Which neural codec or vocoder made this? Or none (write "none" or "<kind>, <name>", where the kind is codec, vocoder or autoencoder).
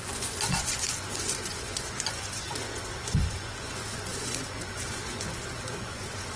vocoder, Vocos